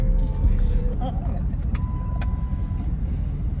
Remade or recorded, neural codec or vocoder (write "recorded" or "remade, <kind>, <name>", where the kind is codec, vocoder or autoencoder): recorded